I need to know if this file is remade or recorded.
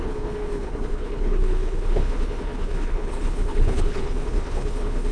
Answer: remade